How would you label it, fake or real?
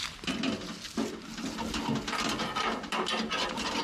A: real